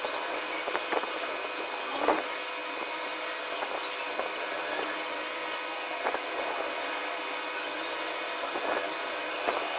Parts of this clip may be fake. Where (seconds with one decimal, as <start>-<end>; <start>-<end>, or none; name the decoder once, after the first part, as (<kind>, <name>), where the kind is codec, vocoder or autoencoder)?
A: none